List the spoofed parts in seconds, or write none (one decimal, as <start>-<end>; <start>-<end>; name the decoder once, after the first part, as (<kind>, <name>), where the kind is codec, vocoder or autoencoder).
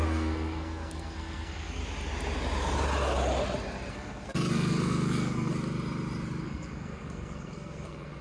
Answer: 0.0-1.8 (codec, SNAC); 3.9-5.5; 6.4-8.2